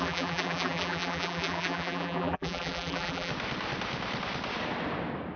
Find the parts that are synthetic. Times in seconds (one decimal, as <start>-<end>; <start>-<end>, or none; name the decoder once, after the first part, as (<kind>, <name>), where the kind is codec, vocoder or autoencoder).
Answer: 0.0-3.3 (vocoder, BigVGAN v2)